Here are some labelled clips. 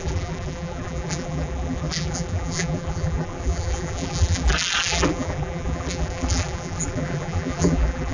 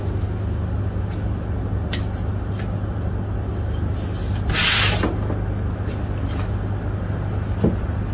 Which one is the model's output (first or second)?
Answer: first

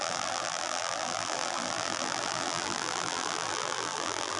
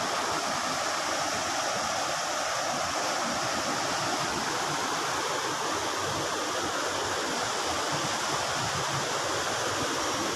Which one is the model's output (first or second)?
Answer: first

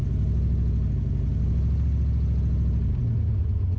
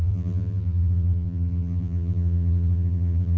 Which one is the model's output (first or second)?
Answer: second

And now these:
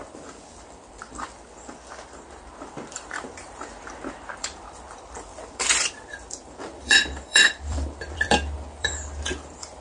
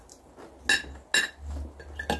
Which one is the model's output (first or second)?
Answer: first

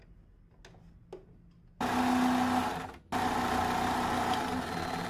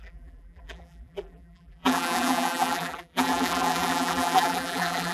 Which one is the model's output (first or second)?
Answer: second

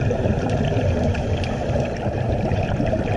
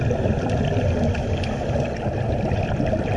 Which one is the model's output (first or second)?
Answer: first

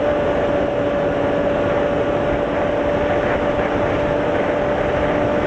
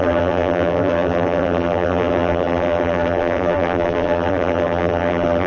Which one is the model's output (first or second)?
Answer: second